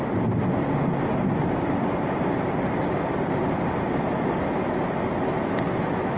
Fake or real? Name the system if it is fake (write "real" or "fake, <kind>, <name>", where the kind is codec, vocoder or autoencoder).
real